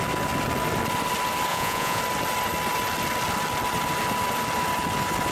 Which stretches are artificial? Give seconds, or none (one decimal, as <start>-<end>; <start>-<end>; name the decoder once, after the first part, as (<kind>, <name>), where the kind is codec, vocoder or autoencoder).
1.5-2.0 (vocoder, Vocos)